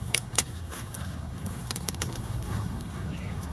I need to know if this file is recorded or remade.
remade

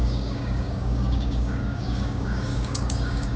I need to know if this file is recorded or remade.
remade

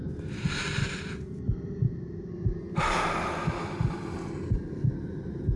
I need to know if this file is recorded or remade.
recorded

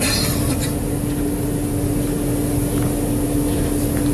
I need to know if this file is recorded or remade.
recorded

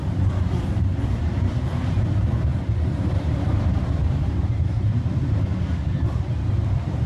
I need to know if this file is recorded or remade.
remade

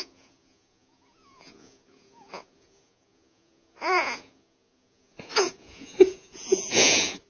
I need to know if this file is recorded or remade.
remade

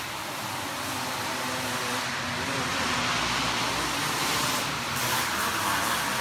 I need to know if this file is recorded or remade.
recorded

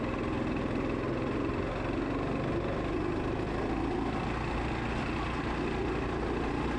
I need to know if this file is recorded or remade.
recorded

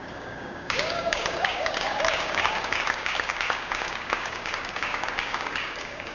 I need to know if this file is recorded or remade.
remade